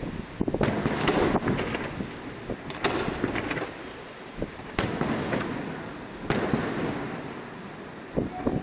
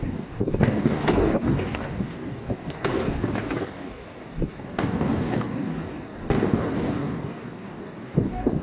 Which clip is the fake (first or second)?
second